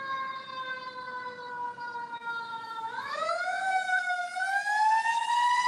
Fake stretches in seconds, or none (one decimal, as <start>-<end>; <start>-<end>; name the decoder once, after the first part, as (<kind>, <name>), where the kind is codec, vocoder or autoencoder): 2.2-4.9 (autoencoder, DAC-VAE)